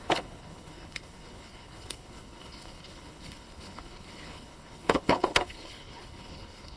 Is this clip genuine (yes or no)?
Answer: no